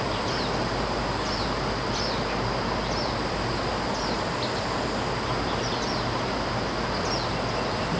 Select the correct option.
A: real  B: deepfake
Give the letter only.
A